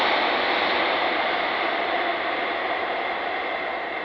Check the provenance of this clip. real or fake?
real